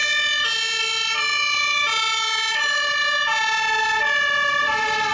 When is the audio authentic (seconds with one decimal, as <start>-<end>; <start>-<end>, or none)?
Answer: 0.0-0.8; 1.3-2.5; 3.0-4.5